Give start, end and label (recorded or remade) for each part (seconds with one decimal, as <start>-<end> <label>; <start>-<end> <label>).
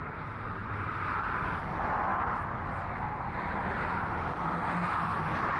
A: 0.0-0.6 recorded; 0.6-1.5 remade; 1.5-2.1 recorded; 2.1-2.9 remade; 2.9-3.6 recorded; 3.6-4.3 remade; 4.3-5.6 recorded